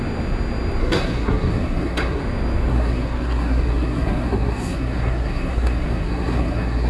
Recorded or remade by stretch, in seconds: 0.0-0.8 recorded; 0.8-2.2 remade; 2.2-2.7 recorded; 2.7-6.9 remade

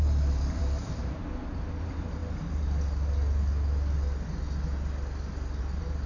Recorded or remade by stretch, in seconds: 0.0-1.2 remade; 1.2-1.8 recorded; 1.8-2.2 remade; 2.2-5.6 recorded; 5.6-6.1 remade